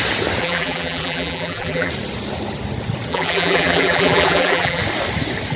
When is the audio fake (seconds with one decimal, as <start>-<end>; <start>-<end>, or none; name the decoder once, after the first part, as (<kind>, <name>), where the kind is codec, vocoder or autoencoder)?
0.4-1.9 (vocoder, BigVGAN v2); 3.1-4.8